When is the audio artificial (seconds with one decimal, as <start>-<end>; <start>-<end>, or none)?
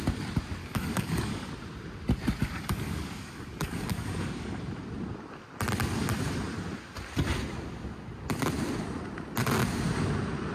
0.6-1.5; 2.4-4.6